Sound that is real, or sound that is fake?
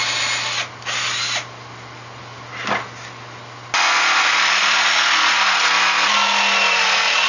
real